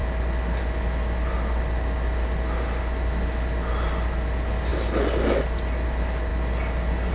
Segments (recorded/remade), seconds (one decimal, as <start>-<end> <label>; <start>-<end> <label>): 0.0-7.1 recorded